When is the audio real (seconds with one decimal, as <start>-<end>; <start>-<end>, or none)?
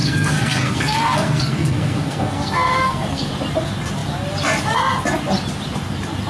3.3-6.3